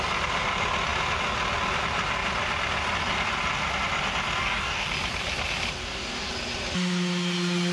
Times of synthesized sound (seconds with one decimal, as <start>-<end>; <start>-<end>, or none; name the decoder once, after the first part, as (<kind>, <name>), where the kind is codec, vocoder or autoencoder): 4.4-4.9 (codec, DAC); 5.8-6.3